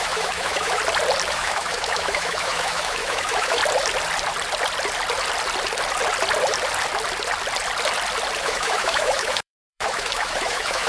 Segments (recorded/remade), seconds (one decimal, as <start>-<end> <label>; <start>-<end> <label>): 0.0-0.8 remade; 0.8-1.3 recorded; 1.3-3.6 remade; 3.6-8.4 recorded; 8.4-10.9 remade